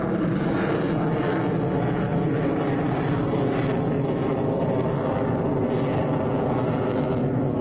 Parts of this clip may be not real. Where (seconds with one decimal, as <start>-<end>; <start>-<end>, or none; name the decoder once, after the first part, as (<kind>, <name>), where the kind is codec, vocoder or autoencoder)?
none